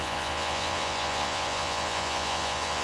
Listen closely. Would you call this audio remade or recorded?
remade